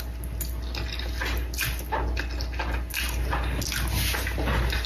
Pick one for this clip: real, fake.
real